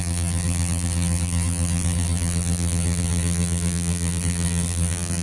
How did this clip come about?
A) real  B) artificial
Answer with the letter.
B